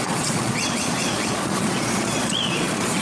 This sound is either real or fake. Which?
fake